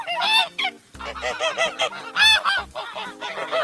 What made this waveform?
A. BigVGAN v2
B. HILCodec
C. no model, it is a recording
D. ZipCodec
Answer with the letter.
A